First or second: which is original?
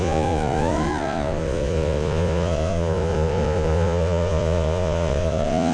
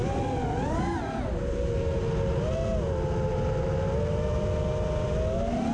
second